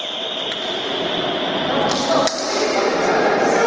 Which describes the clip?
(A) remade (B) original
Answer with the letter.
B